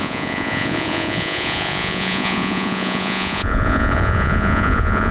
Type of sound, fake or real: fake